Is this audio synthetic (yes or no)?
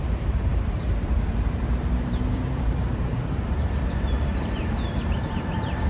yes